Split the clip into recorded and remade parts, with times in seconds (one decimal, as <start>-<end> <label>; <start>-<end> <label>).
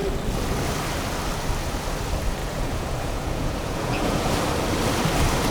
0.0-2.4 recorded; 2.4-4.3 remade; 4.3-5.5 recorded